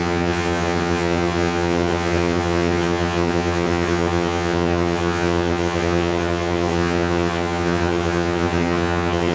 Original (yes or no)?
no